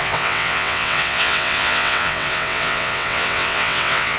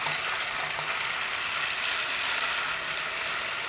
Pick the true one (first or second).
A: second